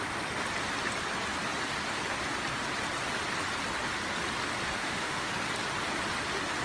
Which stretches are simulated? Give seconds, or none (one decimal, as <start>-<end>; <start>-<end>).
4.8-5.3